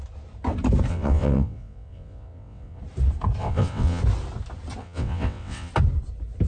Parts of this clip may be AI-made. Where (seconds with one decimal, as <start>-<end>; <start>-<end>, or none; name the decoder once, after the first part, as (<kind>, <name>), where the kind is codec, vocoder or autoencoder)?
0.9-2.8 (vocoder, WaveNeXt); 3.4-4.0; 4.8-5.7